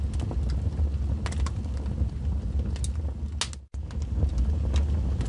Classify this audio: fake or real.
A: real